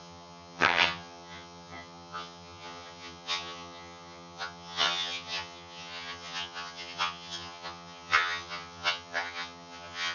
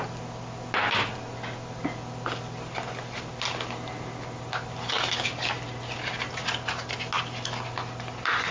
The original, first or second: second